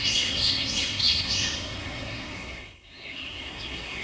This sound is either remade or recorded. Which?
remade